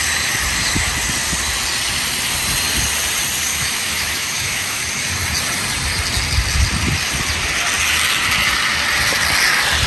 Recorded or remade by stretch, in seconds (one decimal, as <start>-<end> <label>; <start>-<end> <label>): 0.0-3.5 recorded; 3.5-4.8 remade; 4.8-9.9 recorded